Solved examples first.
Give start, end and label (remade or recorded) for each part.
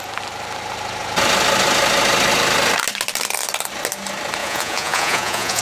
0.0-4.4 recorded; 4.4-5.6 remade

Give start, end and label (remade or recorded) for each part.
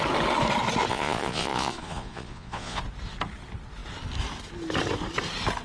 0.0-0.9 recorded; 0.9-2.8 remade; 2.8-5.6 recorded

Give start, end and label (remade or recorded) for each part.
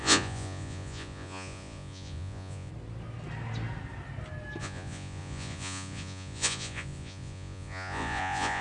0.0-2.7 remade; 2.7-4.6 recorded; 4.6-8.6 remade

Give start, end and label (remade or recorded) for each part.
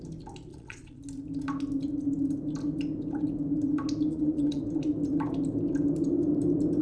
0.0-0.5 recorded; 0.5-1.0 remade; 1.0-4.1 recorded; 4.1-4.6 remade; 4.6-6.8 recorded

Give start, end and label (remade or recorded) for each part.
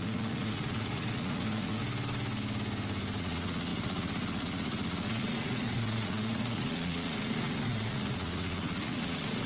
0.0-1.8 remade; 1.8-3.2 recorded; 3.2-9.5 remade